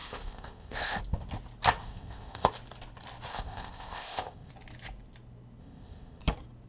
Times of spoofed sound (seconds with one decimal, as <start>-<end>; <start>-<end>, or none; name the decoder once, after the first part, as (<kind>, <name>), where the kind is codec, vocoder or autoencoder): 0.0-1.0 (codec, ZipCodec); 1.8-2.5; 3.3-4.5; 5.6-6.2